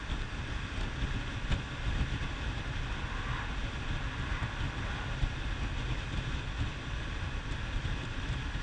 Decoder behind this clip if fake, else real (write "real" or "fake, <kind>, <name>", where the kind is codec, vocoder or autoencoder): real